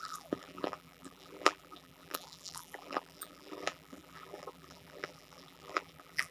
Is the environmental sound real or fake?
fake